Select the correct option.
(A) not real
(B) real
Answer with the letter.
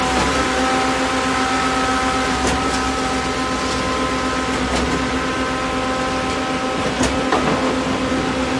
B